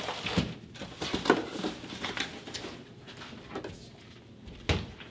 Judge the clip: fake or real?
real